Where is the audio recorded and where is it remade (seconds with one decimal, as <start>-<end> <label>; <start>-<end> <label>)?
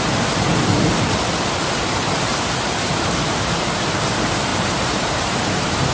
0.0-4.5 recorded; 4.5-5.5 remade; 5.5-5.9 recorded